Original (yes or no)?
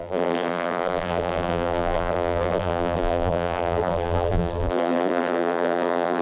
no